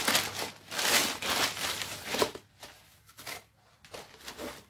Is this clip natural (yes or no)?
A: no